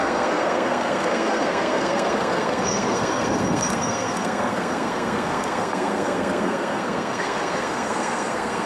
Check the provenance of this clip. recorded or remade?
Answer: remade